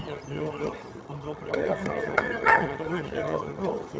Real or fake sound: fake